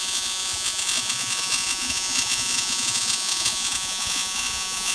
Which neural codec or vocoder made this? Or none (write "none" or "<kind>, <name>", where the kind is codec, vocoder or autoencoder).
vocoder, Vocos